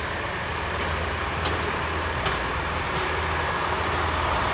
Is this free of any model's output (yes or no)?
yes